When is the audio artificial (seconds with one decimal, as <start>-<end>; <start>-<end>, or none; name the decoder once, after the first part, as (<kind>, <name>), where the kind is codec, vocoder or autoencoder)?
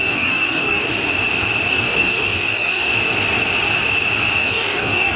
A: 0.0-0.9 (codec, DAC); 1.7-2.9; 4.4-5.2